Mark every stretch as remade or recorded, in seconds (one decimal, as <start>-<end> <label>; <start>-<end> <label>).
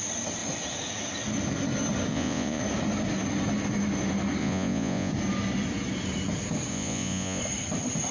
0.0-2.1 recorded; 2.1-2.6 remade; 2.6-4.4 recorded; 4.4-5.1 remade; 5.1-6.7 recorded; 6.7-7.4 remade; 7.4-8.1 recorded